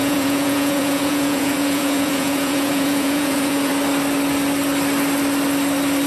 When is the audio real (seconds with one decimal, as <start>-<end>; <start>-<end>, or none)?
3.7-6.1